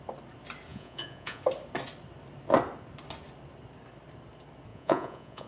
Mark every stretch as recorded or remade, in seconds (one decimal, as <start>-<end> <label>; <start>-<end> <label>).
0.0-0.7 recorded; 0.7-1.4 remade; 1.4-4.7 recorded; 4.7-5.5 remade